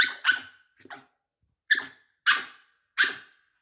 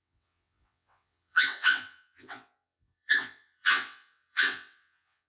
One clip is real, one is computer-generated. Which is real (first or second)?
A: first